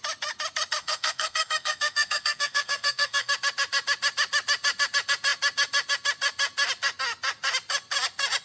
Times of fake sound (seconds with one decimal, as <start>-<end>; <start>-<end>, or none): 0.8-3.3